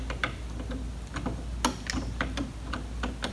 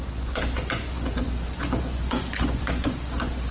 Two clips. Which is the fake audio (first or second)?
second